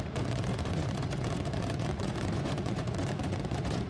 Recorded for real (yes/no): no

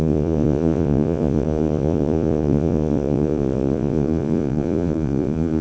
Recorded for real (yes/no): no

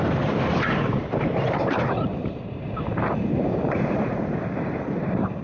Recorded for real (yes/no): no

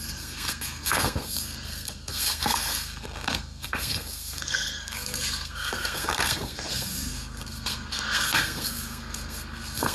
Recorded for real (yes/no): no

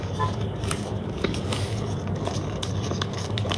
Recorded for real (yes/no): no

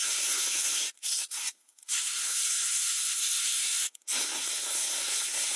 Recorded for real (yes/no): no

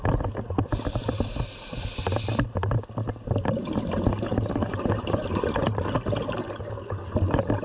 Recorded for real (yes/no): yes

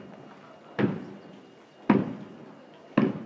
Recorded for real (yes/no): yes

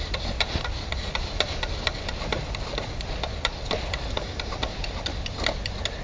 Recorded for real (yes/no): yes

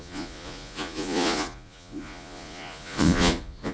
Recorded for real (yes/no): no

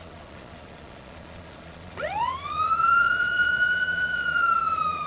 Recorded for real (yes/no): no